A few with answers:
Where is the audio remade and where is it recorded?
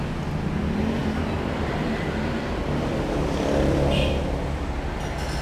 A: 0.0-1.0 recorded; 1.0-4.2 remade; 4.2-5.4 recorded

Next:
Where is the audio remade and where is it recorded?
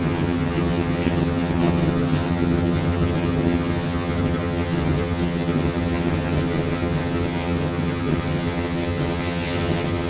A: 0.0-10.1 remade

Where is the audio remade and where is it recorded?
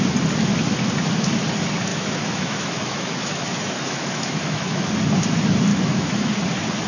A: 0.0-1.9 recorded; 1.9-4.9 remade; 4.9-5.7 recorded; 5.7-6.3 remade; 6.3-6.9 recorded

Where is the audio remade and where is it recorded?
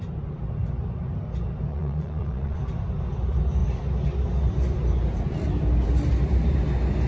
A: 0.0-1.7 recorded; 1.7-2.6 remade; 2.6-7.1 recorded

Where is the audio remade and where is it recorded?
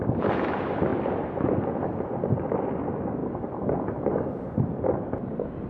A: 0.0-5.7 recorded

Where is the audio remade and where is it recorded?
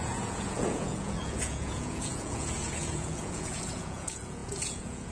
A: 0.0-5.1 remade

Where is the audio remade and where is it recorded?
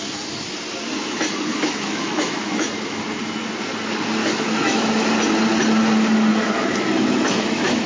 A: 0.0-1.5 recorded; 1.5-3.0 remade; 3.0-4.2 recorded; 4.2-4.9 remade; 4.9-6.3 recorded; 6.3-7.9 remade